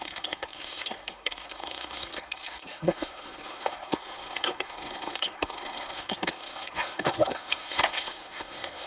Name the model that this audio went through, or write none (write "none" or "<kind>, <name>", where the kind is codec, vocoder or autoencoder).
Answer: codec, SNAC